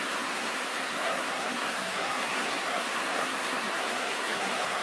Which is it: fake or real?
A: fake